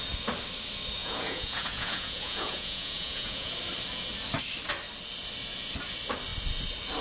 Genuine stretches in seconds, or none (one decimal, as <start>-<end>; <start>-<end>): 0.0-1.0; 3.5-7.0